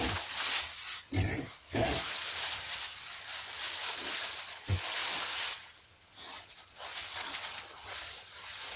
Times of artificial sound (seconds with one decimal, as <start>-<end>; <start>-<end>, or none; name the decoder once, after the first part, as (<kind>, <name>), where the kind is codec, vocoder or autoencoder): 1.4-2.1 (codec, SNAC)